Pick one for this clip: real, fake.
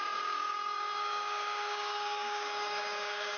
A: fake